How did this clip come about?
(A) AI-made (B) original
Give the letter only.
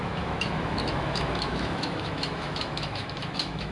A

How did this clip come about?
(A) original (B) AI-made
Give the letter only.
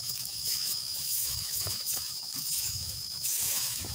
B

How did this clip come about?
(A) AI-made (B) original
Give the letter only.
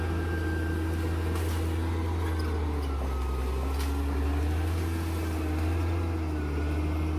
B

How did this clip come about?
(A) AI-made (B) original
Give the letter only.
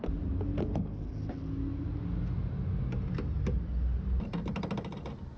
B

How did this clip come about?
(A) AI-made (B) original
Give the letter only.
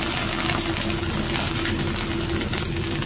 B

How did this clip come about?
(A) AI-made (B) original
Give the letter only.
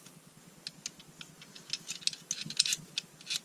B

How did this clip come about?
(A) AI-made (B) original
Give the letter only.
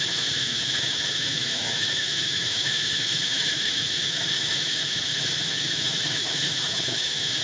A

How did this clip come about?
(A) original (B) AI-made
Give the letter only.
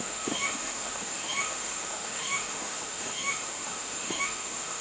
B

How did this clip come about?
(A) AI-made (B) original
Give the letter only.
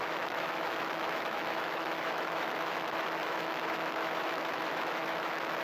A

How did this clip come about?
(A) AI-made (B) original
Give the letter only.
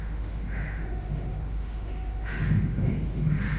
A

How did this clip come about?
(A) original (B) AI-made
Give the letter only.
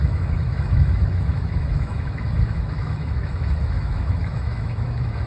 B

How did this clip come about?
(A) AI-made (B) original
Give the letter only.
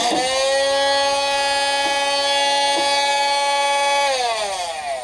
B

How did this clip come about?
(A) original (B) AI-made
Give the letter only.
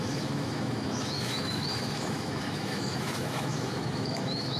B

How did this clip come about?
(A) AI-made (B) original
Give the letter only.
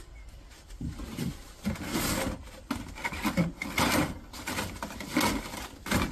B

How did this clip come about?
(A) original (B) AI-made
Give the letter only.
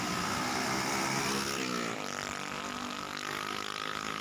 A